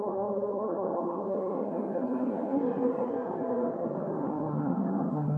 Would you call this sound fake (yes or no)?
yes